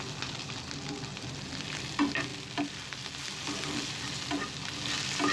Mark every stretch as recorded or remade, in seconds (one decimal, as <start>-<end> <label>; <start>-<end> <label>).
0.0-5.3 recorded